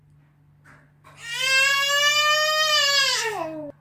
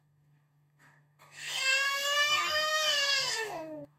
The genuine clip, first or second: first